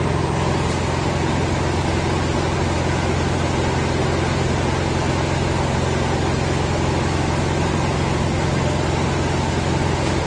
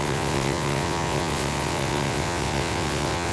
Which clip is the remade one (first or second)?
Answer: second